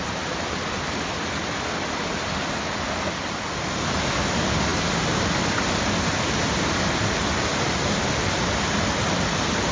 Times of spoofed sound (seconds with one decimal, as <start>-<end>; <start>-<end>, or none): 4.7-5.2; 7.5-8.2